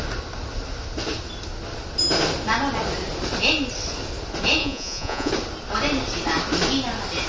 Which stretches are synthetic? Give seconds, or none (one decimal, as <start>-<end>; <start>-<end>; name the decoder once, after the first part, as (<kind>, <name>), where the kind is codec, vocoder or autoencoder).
4.6-5.3 (vocoder, Vocos)